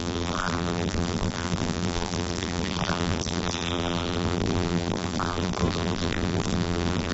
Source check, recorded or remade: remade